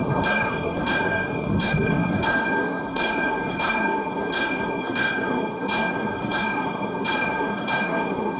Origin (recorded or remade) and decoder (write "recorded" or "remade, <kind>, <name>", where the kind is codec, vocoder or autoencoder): remade, codec, SNAC